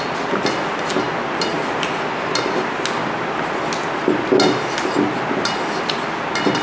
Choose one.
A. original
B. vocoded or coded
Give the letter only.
A